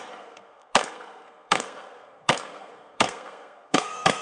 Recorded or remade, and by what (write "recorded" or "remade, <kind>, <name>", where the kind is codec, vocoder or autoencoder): remade, codec, SNAC